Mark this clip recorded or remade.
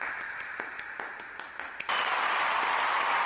recorded